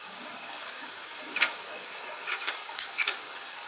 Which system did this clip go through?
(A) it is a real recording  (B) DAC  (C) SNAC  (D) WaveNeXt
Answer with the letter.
B